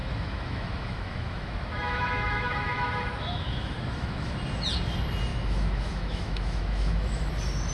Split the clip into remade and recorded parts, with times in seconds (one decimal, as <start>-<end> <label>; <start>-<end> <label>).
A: 0.0-4.3 remade; 4.3-5.3 recorded; 5.3-7.3 remade; 7.3-7.7 recorded